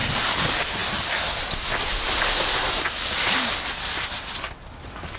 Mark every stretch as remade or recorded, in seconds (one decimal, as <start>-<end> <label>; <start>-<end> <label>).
0.0-5.2 recorded